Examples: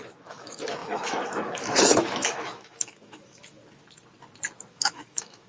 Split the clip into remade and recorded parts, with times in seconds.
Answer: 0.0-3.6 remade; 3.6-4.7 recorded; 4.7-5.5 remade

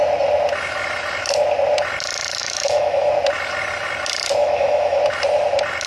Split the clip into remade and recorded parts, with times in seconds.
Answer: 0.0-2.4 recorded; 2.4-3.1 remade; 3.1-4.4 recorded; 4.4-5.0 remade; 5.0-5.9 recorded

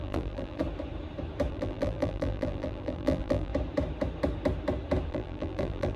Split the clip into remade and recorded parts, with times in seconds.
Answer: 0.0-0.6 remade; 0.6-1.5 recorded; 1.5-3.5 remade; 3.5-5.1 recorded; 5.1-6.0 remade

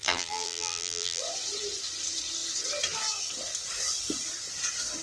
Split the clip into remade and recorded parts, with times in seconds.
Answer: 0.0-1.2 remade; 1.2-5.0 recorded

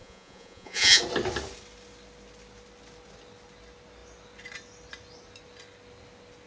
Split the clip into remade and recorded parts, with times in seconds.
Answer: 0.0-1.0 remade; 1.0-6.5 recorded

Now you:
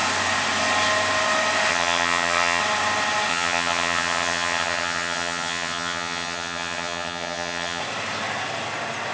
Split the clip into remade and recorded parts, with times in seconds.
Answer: 0.0-1.7 recorded; 1.7-2.6 remade; 2.6-3.3 recorded; 3.3-7.8 remade; 7.8-9.1 recorded

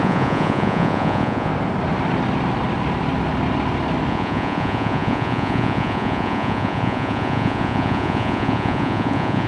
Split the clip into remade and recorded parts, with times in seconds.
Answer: 0.0-1.5 remade; 1.5-4.1 recorded; 4.1-9.5 remade

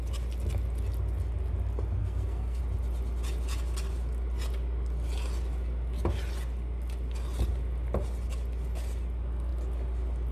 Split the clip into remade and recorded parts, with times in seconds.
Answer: 0.0-2.0 recorded; 2.0-2.6 remade; 2.6-10.3 recorded